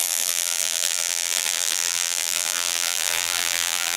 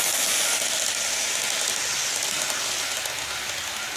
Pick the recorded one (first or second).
second